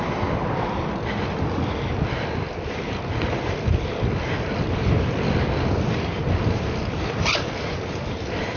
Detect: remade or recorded recorded